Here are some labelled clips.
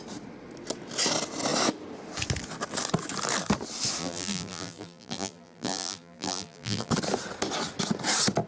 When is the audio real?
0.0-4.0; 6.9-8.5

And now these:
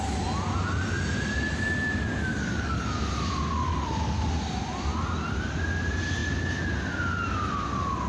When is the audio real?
0.0-2.5; 3.0-3.7; 4.3-8.1

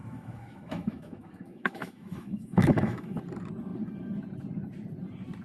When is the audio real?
3.2-5.4

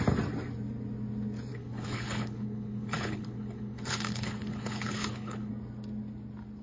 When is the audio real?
0.0-1.5; 5.5-6.6

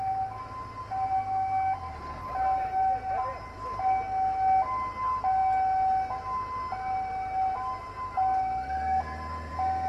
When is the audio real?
0.0-9.9

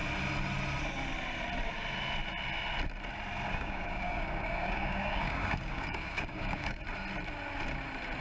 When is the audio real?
0.0-3.5; 6.8-8.2